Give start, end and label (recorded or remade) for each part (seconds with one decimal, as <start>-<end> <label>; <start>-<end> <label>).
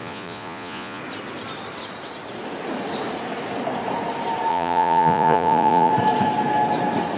0.0-1.0 remade; 1.0-4.5 recorded; 4.5-5.9 remade; 5.9-7.2 recorded